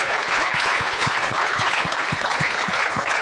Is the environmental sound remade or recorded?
remade